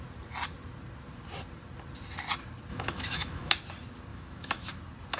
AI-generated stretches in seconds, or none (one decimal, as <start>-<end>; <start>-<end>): 2.7-3.5; 4.1-4.7